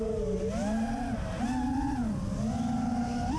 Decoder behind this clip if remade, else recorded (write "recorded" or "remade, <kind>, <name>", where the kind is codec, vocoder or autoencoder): recorded